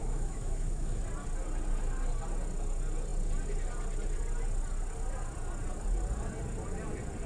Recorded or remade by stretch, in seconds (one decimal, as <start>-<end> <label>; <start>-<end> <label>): 0.0-1.0 remade; 1.0-7.3 recorded